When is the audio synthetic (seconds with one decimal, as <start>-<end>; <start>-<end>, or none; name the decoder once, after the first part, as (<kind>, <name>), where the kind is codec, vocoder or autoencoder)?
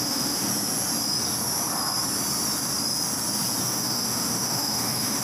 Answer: 0.0-0.5 (autoencoder, DAC-VAE); 3.6-5.2